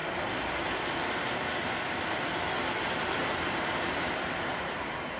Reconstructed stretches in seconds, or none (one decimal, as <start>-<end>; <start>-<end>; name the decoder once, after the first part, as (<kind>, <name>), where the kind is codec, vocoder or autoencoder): 1.2-5.2 (vocoder, BigVGAN v2)